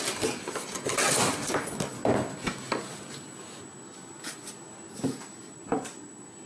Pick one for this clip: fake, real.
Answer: real